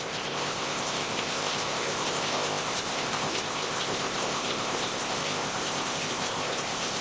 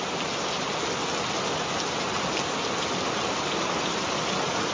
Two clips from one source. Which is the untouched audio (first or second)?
second